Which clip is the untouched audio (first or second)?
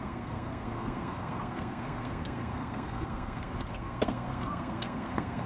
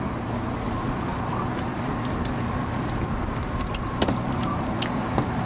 second